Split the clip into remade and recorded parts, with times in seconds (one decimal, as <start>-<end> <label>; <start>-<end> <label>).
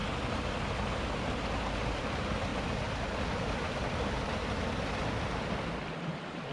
0.0-6.5 recorded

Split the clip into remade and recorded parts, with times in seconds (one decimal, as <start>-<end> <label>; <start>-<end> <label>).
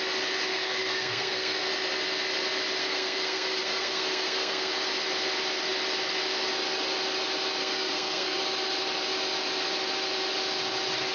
0.0-0.5 recorded; 0.5-1.7 remade; 1.7-2.8 recorded; 2.8-4.7 remade; 4.7-7.6 recorded; 7.6-8.4 remade; 8.4-11.1 recorded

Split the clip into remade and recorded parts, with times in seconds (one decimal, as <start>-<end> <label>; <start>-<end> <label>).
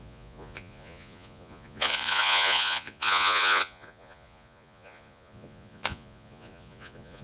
0.0-7.2 remade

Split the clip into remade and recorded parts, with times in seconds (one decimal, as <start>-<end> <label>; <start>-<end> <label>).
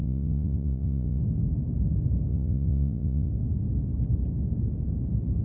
0.0-1.2 remade; 1.2-2.3 recorded; 2.3-3.3 remade; 3.3-5.4 recorded